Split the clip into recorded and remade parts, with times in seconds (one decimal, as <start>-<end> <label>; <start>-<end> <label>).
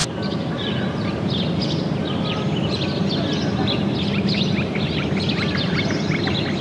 0.0-1.4 remade; 1.4-6.6 recorded